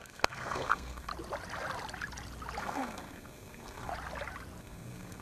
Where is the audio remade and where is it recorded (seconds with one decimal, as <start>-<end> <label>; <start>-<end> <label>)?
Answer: 0.0-1.1 remade; 1.1-2.6 recorded; 2.6-3.9 remade; 3.9-4.6 recorded; 4.6-5.2 remade